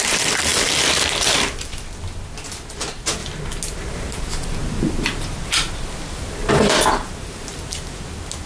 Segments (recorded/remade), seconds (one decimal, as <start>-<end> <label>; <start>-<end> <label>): 0.0-8.5 recorded